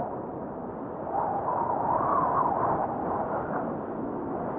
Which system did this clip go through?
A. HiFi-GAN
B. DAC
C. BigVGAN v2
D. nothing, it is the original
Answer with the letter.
D